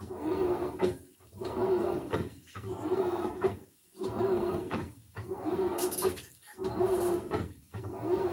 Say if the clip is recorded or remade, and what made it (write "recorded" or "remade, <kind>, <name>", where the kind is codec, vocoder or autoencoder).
remade, codec, SNAC